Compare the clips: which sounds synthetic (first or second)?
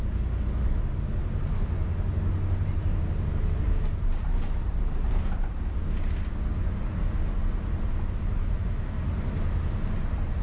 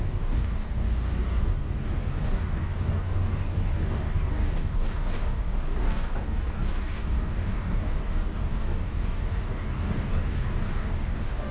second